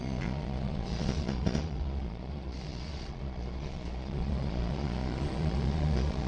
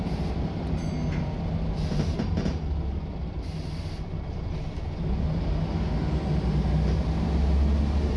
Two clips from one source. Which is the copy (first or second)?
first